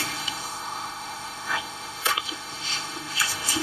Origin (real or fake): fake